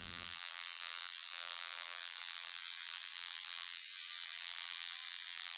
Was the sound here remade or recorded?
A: remade